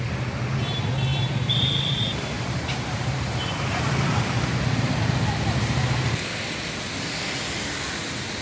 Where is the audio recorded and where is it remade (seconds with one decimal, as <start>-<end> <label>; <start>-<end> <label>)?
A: 0.0-1.1 recorded; 1.1-3.9 remade; 3.9-8.4 recorded